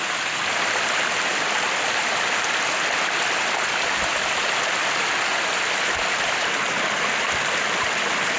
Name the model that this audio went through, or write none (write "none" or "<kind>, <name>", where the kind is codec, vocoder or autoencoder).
none